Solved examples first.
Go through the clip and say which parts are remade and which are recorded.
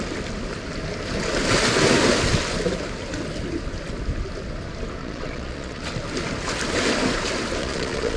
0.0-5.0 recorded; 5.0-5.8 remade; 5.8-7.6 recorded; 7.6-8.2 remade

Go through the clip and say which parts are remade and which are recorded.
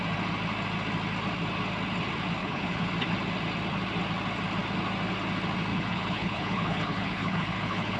0.0-2.4 recorded; 2.4-2.9 remade; 2.9-5.7 recorded; 5.7-8.0 remade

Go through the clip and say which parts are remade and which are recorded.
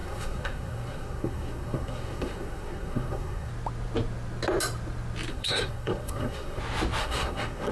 0.0-3.5 remade; 3.5-5.3 recorded; 5.3-6.6 remade; 6.6-7.0 recorded; 7.0-7.7 remade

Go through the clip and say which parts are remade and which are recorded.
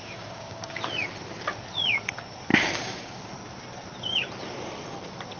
0.0-0.8 remade; 0.8-2.5 recorded; 2.5-3.3 remade; 3.3-5.4 recorded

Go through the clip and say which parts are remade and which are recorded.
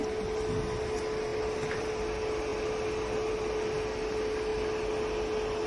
0.0-1.3 recorded; 1.3-1.9 remade; 1.9-2.5 recorded; 2.5-3.3 remade; 3.3-5.7 recorded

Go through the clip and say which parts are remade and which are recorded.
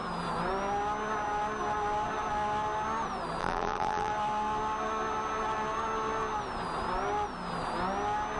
0.0-3.4 recorded; 3.4-4.1 remade; 4.1-8.4 recorded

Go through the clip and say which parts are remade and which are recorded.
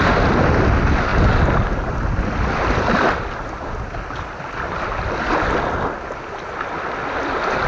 0.0-7.7 recorded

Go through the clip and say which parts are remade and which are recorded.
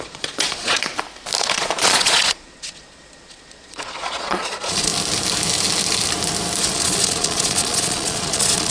0.0-0.9 remade; 0.9-1.4 recorded; 1.4-4.9 remade; 4.9-6.6 recorded; 6.6-8.7 remade